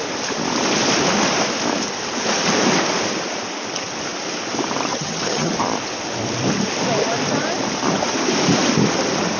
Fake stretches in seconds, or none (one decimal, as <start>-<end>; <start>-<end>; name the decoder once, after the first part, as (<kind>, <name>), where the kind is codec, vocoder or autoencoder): 4.9-5.5 (vocoder, HiFi-GAN)